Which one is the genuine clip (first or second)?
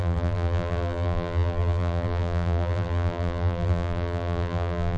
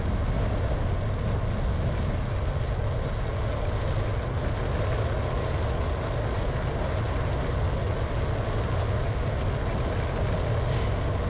second